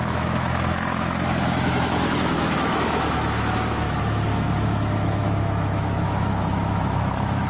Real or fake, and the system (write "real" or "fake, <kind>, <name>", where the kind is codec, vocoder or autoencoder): fake, autoencoder, DAC-VAE